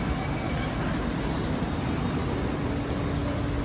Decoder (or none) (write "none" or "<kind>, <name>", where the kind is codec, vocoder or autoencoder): none